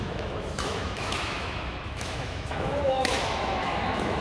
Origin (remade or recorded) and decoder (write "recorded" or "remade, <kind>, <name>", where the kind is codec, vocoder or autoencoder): remade, autoencoder, DAC-VAE